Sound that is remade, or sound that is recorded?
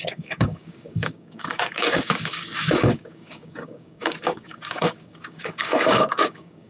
remade